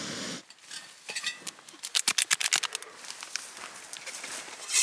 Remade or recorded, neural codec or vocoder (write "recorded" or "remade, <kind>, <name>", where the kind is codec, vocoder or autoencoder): recorded